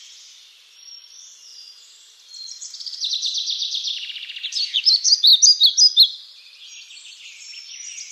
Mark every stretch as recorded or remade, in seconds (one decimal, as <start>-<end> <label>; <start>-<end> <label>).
0.0-5.3 remade; 5.3-8.1 recorded